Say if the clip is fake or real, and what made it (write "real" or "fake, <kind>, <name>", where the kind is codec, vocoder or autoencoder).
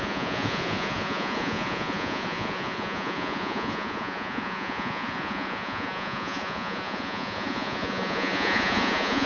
fake, vocoder, Vocos